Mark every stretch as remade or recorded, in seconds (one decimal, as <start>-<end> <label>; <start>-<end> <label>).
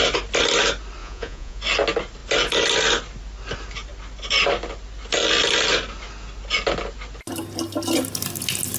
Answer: 0.0-1.0 recorded; 1.0-1.6 remade; 1.6-8.8 recorded